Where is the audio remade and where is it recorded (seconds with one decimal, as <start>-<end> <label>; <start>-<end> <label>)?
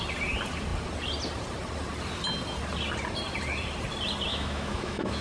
0.0-4.3 recorded; 4.3-5.2 remade